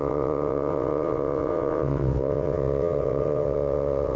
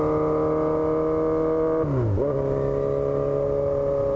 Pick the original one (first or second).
second